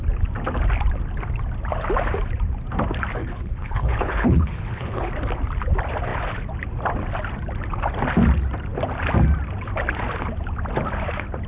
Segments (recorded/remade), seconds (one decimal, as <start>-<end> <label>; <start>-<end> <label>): 0.0-3.2 recorded; 3.2-5.1 remade; 5.1-11.5 recorded